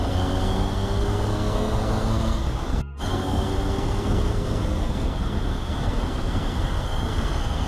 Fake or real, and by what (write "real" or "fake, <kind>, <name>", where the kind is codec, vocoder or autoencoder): fake, codec, SNAC